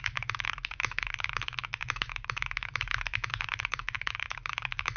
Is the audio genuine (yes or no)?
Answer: no